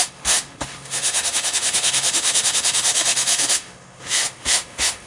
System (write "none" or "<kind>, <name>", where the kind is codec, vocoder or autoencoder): autoencoder, DAC-VAE